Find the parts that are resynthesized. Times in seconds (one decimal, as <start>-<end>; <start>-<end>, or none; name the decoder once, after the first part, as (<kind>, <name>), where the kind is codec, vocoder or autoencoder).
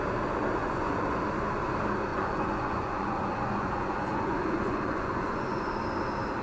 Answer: 0.6-1.2 (vocoder, Vocos); 2.1-5.7